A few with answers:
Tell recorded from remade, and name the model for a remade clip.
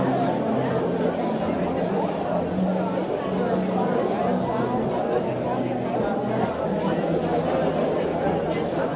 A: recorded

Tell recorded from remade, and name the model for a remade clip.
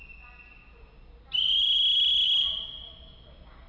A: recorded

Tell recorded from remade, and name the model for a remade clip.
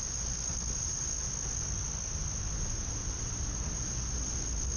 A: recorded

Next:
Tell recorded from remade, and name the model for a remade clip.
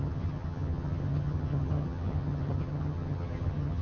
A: remade, vocoder, HiFi-GAN